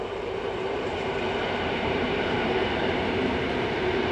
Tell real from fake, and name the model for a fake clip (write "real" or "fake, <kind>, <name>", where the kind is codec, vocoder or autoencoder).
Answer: fake, vocoder, BigVGAN v2